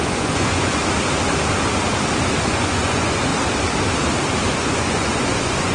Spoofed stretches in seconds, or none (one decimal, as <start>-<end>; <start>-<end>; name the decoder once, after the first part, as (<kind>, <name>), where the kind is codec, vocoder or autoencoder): 0.0-0.8 (vocoder, Vocos); 2.4-3.3; 4.5-5.7